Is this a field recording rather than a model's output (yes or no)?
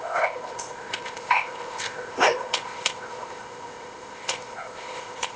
no